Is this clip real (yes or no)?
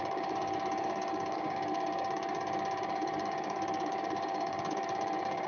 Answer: no